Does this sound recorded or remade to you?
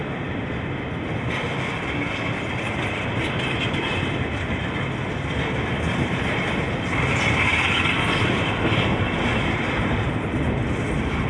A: recorded